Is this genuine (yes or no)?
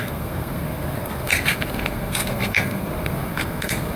no